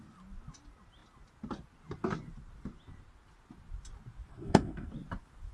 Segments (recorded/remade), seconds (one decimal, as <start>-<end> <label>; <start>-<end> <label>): 0.0-4.3 recorded; 4.3-4.9 remade; 4.9-5.5 recorded